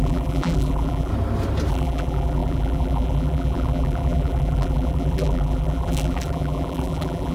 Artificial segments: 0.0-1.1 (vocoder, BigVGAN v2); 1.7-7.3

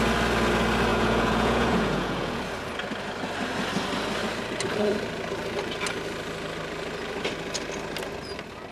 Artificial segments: 0.9-2.4 (vocoder, Vocos)